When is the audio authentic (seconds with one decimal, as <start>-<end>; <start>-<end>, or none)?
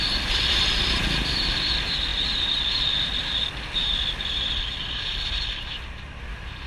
0.0-6.7